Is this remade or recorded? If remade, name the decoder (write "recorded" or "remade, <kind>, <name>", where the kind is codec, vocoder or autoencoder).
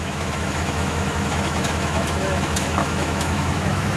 remade, autoencoder, DAC-VAE